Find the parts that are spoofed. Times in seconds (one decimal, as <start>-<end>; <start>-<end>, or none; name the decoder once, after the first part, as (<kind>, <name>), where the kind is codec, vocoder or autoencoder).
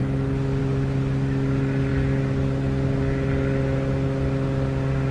none